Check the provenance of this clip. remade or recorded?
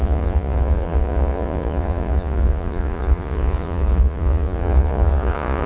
remade